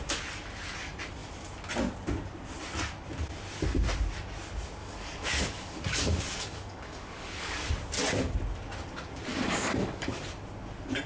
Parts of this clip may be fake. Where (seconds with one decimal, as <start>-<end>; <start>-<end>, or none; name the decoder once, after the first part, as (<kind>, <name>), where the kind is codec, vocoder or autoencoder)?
4.8-7.7 (codec, DAC); 9.3-10.2